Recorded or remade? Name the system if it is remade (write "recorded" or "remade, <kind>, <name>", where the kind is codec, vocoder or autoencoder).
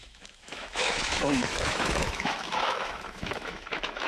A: remade, autoencoder, DAC-VAE